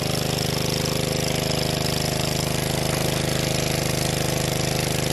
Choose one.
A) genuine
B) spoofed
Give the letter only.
A